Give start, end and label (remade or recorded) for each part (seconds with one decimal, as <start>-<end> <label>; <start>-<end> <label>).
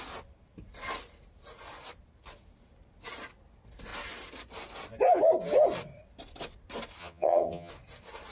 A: 0.0-7.0 recorded; 7.0-7.7 remade; 7.7-8.3 recorded